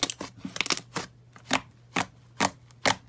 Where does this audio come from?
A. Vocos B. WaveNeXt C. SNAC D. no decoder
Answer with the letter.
D